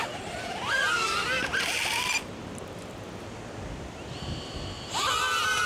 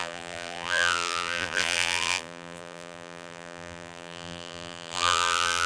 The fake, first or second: second